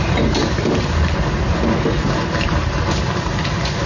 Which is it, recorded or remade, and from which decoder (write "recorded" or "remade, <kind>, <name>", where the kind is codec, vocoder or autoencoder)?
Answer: remade, vocoder, BigVGAN v2